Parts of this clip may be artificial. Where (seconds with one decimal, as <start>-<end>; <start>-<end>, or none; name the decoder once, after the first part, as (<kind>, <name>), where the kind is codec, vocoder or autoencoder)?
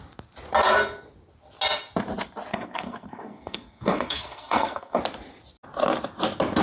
2.5-5.0 (codec, SNAC)